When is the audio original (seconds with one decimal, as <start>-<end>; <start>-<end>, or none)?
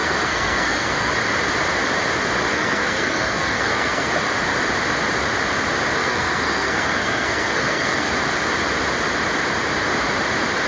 1.1-2.5; 4.1-6.0; 8.1-10.7